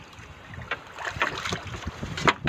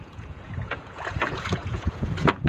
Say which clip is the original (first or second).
first